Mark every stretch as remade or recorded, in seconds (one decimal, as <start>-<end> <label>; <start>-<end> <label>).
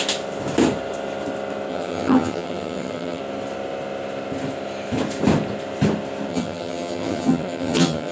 0.0-1.7 recorded; 1.7-3.2 remade; 3.2-6.3 recorded; 6.3-8.1 remade